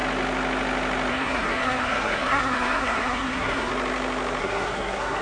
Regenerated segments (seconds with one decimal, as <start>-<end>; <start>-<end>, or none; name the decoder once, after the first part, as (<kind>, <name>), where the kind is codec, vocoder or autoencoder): 1.1-3.7 (codec, SNAC); 4.4-5.2